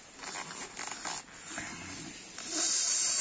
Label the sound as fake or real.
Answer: real